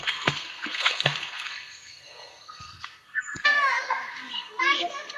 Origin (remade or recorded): remade